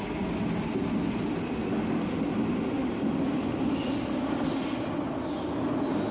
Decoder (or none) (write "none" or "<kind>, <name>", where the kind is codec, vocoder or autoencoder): none